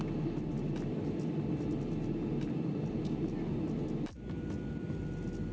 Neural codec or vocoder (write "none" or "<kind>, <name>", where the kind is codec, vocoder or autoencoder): none